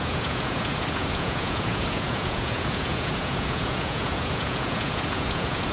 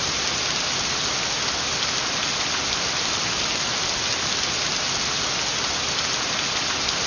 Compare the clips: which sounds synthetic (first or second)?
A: first